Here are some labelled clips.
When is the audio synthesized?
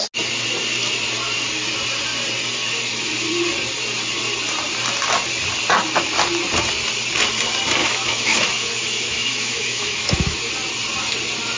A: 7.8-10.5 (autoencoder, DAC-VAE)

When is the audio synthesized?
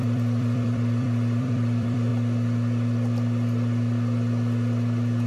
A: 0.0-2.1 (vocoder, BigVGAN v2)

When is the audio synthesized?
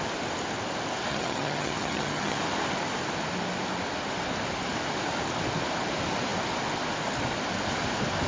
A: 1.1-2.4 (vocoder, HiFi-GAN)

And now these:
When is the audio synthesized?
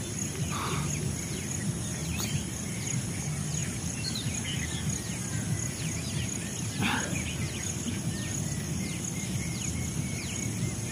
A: 2.0-2.8 (vocoder, BigVGAN v2); 3.6-4.4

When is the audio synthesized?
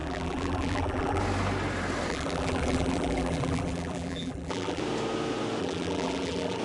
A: 0.0-1.2 (vocoder, BigVGAN v2); 2.1-4.8; 5.6-6.6